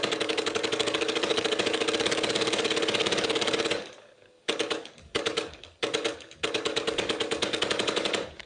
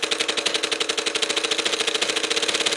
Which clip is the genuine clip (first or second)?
second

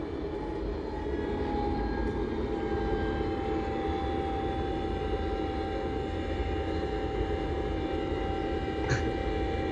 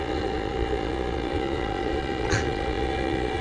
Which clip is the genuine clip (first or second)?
first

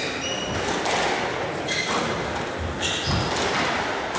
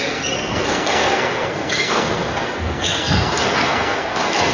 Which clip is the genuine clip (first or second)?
first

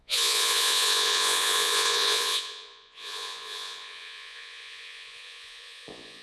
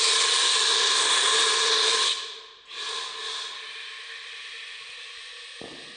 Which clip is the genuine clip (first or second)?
second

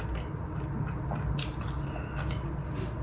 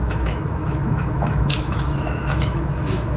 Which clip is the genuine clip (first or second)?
first